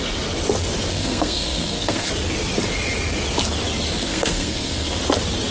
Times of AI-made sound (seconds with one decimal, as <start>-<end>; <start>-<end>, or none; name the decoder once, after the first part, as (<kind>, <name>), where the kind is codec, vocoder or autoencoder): 0.9-2.1 (codec, SNAC); 4.0-5.0